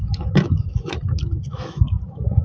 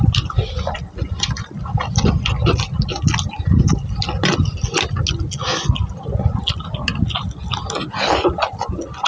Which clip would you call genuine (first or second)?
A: second